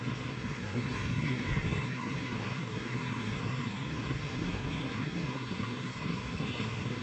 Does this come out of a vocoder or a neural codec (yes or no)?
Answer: yes